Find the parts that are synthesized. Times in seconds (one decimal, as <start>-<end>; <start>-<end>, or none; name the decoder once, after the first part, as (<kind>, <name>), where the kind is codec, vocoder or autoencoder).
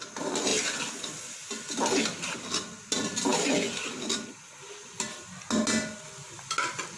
none